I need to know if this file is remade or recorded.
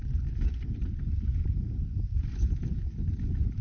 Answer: recorded